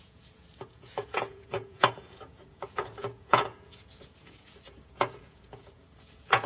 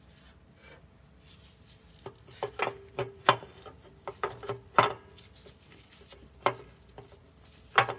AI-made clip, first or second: first